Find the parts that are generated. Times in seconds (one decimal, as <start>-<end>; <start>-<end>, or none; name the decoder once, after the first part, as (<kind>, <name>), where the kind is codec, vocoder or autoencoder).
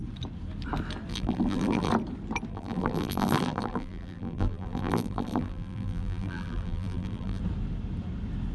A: 1.1-1.9 (vocoder, BigVGAN v2); 2.5-7.4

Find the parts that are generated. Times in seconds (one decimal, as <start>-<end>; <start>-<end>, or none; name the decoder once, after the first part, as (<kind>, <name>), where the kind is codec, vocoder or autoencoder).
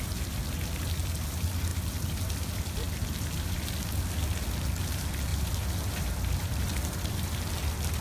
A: 5.3-8.0 (vocoder, BigVGAN v2)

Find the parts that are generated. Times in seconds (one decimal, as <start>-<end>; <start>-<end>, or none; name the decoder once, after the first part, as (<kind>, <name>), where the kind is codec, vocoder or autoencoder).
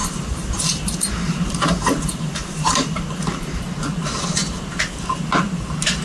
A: 0.0-3.6 (vocoder, BigVGAN v2)